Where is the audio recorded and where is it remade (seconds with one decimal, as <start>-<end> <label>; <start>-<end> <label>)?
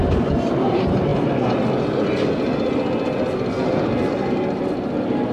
0.0-5.3 recorded